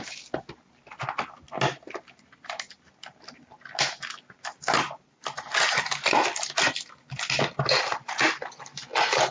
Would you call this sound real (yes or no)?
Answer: yes